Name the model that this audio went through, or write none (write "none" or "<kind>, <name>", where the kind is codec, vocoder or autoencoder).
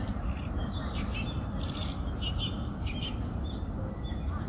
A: none